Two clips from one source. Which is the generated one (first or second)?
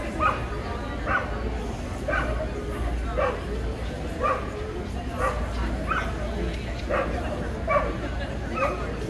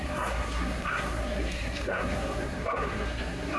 second